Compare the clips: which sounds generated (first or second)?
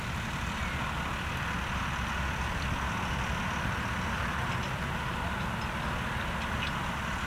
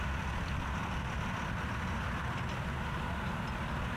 second